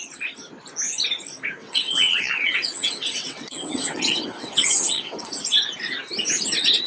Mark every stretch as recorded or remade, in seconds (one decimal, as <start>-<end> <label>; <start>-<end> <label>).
0.0-1.6 recorded; 1.6-5.3 remade; 5.3-6.9 recorded